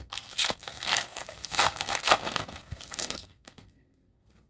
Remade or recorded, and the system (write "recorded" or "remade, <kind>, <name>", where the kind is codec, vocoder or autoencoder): remade, codec, SNAC